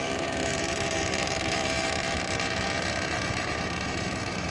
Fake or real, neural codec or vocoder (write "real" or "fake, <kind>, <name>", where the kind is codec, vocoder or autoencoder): fake, vocoder, BigVGAN v2